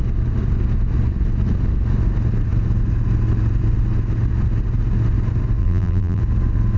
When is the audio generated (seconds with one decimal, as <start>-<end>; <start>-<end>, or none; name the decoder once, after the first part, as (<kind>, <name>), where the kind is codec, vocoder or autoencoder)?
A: 5.6-6.2 (vocoder, BigVGAN v2)